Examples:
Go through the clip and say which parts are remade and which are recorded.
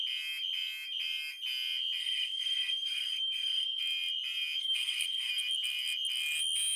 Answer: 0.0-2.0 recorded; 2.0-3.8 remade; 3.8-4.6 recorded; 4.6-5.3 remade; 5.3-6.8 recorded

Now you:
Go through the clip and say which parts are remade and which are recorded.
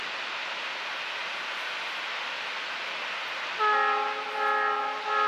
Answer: 0.0-5.3 recorded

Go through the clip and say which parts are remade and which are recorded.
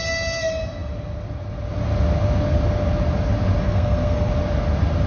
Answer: 0.0-3.6 recorded; 3.6-4.3 remade; 4.3-5.1 recorded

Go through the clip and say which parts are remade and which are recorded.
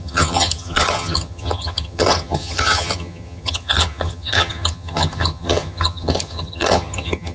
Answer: 0.0-7.3 remade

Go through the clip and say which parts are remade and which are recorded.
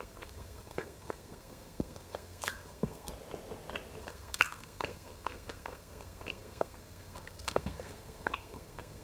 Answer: 0.0-3.1 remade; 3.1-4.0 recorded; 4.0-9.0 remade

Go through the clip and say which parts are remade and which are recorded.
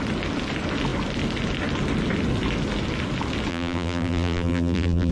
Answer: 0.0-3.5 recorded; 3.5-5.1 remade